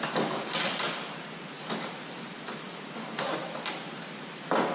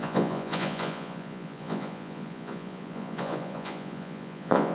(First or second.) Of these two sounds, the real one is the first